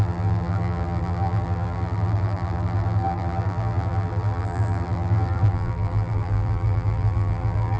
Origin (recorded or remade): remade